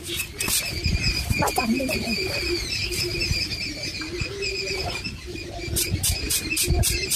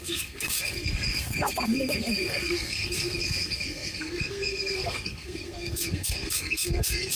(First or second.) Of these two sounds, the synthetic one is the second